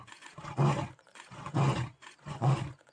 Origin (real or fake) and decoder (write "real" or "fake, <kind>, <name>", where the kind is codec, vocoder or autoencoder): fake, vocoder, Vocos